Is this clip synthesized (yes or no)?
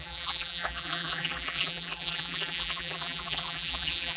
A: yes